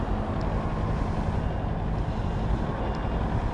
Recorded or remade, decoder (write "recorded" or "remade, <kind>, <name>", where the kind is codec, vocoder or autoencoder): recorded